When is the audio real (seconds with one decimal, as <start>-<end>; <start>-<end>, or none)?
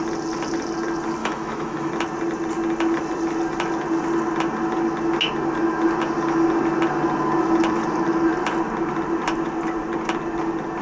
0.0-1.2; 1.9-10.8